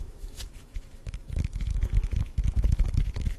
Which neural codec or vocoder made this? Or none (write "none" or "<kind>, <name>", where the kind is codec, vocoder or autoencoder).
autoencoder, DAC-VAE